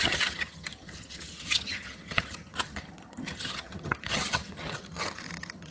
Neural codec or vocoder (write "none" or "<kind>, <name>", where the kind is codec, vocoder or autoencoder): vocoder, HiFi-GAN